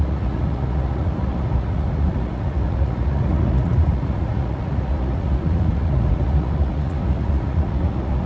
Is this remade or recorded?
remade